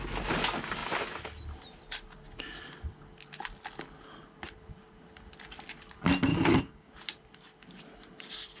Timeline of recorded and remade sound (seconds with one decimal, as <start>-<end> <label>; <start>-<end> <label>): 0.0-6.3 recorded; 6.3-6.9 remade; 6.9-8.6 recorded